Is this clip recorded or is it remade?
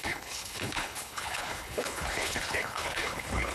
remade